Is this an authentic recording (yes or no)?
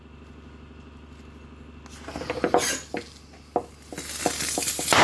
yes